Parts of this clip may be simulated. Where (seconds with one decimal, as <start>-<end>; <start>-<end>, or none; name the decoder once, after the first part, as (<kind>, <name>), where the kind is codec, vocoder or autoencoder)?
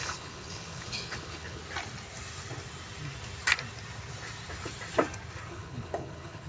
0.0-1.6 (codec, HILCodec); 5.5-6.5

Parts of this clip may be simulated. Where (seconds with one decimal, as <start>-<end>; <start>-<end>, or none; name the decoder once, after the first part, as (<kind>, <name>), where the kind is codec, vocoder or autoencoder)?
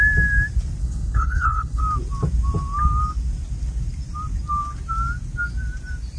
0.8-1.8 (codec, HILCodec)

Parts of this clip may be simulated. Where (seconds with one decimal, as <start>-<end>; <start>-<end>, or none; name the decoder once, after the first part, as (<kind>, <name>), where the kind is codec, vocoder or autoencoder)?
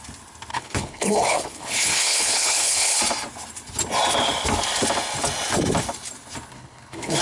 0.5-3.0 (codec, HILCodec); 6.5-7.2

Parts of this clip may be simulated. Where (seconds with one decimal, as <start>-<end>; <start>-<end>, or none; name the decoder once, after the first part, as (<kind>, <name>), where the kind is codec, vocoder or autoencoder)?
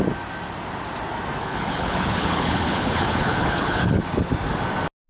1.4-4.0 (codec, HILCodec)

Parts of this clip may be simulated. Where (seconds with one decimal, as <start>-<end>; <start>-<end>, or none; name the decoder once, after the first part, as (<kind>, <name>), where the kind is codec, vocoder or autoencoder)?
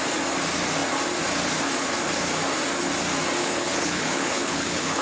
3.4-5.0 (codec, HILCodec)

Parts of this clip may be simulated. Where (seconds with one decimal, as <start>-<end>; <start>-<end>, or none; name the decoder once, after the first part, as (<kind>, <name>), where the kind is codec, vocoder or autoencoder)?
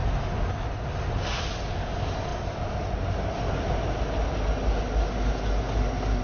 none